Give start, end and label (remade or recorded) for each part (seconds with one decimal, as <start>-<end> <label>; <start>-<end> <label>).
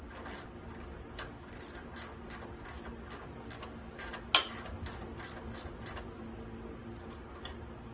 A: 0.0-7.9 recorded